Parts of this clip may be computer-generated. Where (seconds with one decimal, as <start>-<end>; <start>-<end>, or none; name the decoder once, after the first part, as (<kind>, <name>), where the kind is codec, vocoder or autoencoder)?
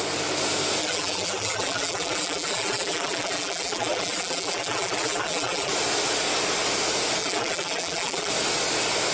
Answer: 0.8-5.7 (vocoder, BigVGAN v2); 7.2-8.3